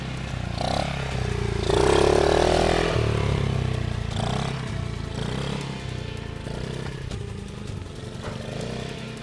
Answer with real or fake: real